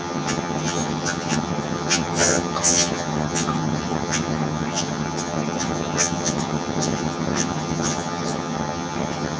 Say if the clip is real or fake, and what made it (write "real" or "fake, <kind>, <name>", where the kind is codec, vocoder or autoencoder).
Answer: fake, vocoder, HiFi-GAN